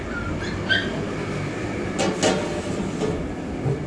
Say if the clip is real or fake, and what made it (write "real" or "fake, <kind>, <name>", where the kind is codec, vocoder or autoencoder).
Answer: real